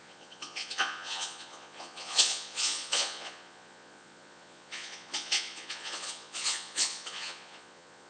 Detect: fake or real fake